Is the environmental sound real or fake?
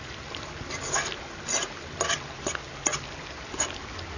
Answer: real